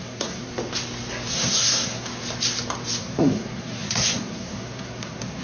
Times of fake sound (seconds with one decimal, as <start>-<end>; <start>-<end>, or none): 0.0-0.5; 1.3-2.1; 3.0-5.4